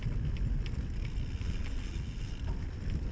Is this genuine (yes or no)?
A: yes